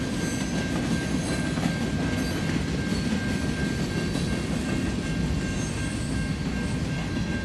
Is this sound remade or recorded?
recorded